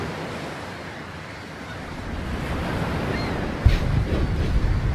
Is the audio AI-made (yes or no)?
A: yes